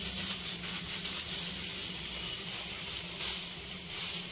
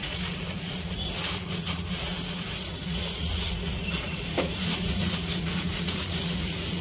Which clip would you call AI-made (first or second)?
second